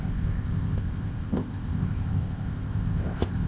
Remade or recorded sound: remade